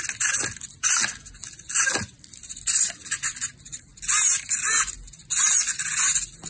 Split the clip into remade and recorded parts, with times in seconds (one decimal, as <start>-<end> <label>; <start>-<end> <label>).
0.0-6.5 recorded